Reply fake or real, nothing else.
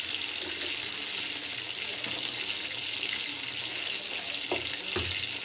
real